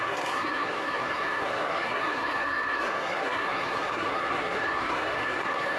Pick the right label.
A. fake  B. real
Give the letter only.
A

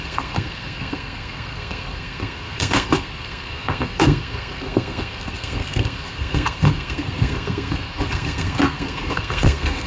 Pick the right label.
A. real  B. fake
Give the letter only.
B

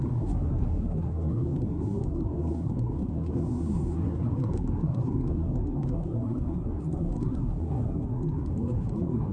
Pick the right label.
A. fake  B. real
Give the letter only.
A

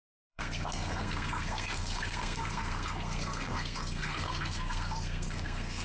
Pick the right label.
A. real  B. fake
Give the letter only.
B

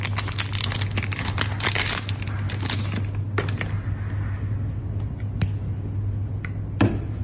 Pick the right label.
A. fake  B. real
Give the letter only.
B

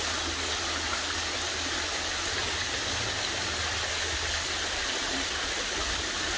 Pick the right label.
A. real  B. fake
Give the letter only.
A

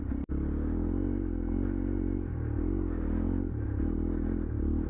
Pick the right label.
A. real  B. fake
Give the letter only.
A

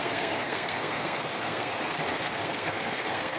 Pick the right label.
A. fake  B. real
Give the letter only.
A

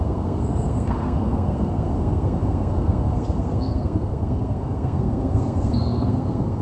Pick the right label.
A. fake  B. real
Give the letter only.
A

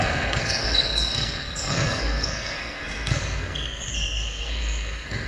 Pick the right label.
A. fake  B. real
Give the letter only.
A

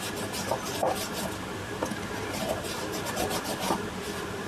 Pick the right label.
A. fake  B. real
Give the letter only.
B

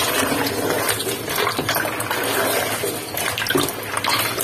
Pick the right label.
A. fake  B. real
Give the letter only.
B